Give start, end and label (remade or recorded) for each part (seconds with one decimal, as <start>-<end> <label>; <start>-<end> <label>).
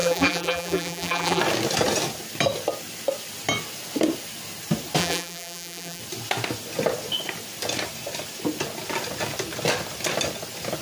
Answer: 0.0-1.4 remade; 1.4-5.0 recorded; 5.0-6.0 remade; 6.0-10.8 recorded